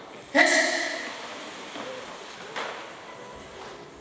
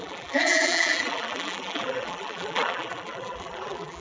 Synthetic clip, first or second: second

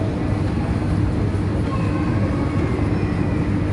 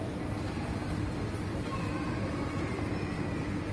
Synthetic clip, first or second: second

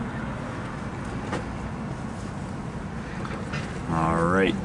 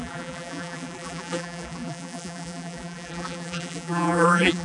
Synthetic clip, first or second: second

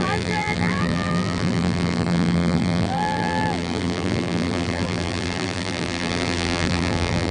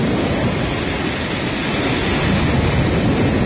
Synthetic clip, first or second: first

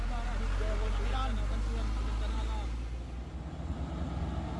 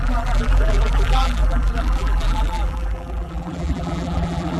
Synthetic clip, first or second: second